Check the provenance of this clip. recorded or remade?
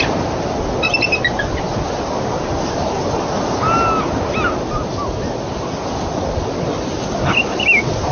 recorded